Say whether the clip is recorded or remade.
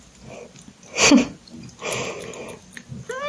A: recorded